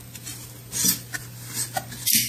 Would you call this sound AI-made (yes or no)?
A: no